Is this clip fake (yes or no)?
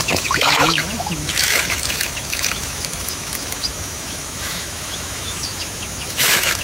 yes